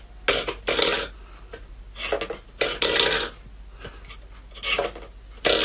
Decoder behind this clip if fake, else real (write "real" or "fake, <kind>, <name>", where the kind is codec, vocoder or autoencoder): real